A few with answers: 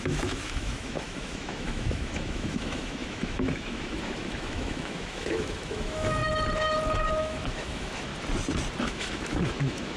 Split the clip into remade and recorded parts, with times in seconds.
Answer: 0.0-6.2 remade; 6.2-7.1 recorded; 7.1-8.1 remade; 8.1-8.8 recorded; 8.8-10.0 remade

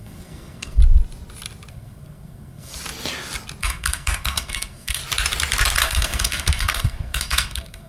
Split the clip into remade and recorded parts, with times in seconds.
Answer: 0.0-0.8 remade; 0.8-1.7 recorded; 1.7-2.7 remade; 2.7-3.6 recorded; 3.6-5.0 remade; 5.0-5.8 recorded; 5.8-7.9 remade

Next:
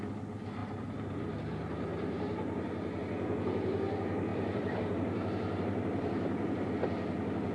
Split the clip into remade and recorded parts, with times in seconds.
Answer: 0.0-0.6 recorded; 0.6-1.3 remade; 1.3-1.9 recorded; 1.9-3.0 remade; 3.0-4.3 recorded; 4.3-6.7 remade; 6.7-7.5 recorded